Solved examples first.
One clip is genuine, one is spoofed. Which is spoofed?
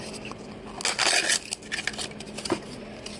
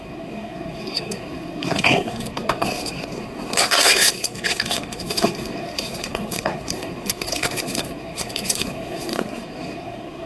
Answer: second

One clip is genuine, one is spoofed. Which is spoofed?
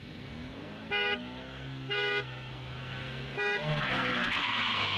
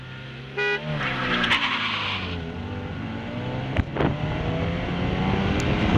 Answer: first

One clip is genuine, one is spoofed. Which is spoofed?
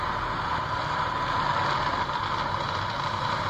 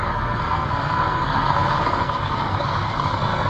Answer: second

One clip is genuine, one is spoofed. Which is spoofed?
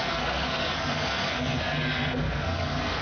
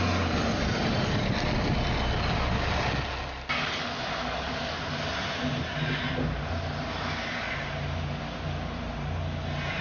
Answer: first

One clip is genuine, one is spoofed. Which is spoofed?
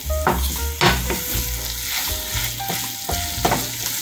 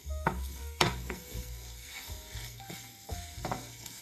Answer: second